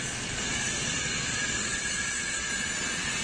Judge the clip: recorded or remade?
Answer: remade